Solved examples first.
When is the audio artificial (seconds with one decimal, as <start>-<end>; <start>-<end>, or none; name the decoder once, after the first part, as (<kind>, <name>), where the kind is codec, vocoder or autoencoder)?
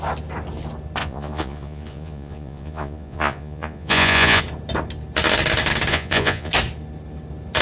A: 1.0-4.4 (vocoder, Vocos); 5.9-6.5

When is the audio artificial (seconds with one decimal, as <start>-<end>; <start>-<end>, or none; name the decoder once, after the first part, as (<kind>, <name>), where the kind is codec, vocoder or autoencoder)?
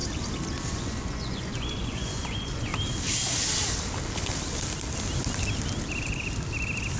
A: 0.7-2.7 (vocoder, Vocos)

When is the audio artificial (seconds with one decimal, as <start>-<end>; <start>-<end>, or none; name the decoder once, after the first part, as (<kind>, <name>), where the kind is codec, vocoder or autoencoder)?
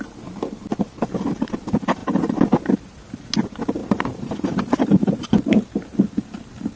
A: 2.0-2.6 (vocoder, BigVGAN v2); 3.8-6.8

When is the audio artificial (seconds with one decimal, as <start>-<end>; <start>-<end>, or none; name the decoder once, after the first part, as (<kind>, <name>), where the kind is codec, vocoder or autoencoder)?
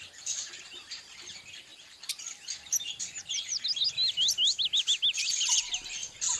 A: none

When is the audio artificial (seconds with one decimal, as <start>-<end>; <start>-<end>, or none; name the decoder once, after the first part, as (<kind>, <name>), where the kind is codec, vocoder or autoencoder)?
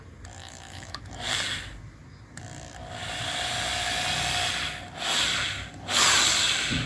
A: 0.4-1.0 (autoencoder, DAC-VAE)